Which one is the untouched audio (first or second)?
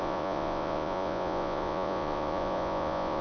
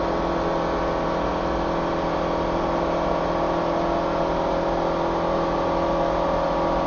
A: second